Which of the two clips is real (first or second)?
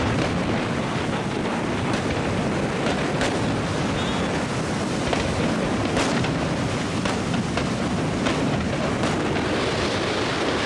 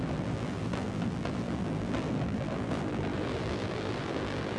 first